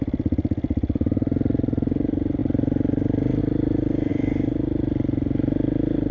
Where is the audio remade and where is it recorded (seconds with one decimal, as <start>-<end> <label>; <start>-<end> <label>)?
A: 0.0-6.1 recorded